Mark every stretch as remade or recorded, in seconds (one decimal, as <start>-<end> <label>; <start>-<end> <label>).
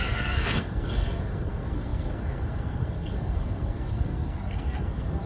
0.0-5.3 remade